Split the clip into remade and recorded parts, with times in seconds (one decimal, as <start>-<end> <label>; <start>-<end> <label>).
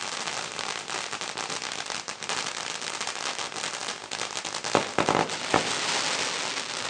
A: 0.0-6.9 recorded